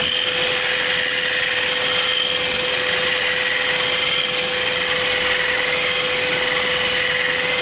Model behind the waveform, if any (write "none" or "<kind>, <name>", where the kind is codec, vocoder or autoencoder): none